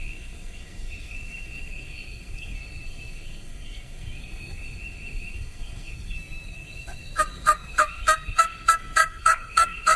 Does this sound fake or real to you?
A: fake